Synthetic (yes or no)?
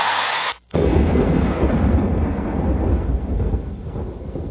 yes